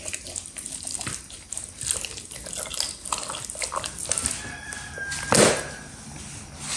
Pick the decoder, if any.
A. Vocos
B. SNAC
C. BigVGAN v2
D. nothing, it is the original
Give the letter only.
D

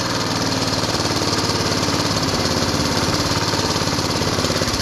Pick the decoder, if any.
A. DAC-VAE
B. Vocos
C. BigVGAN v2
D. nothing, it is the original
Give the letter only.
C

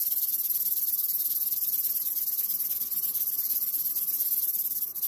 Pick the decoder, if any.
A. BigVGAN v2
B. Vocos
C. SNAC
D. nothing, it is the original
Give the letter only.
A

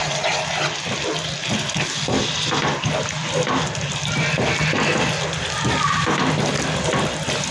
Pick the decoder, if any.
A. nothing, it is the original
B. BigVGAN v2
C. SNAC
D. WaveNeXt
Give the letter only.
A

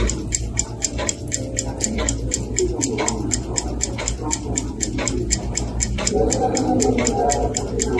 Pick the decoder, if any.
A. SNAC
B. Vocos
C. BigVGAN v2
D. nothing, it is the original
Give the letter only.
C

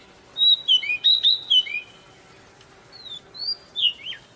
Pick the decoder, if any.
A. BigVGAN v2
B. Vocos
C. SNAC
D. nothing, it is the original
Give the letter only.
D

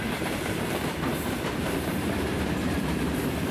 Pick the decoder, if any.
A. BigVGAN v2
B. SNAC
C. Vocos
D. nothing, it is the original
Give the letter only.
A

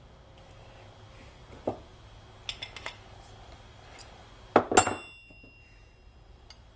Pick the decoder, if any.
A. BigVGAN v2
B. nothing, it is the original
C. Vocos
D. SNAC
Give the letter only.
B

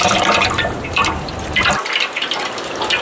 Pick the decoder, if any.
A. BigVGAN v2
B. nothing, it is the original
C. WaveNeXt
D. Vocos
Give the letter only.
A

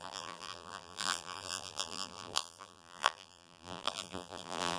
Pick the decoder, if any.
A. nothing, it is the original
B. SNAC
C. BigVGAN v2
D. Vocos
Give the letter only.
C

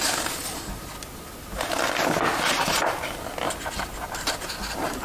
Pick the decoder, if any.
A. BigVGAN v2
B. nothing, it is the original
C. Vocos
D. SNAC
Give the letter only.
B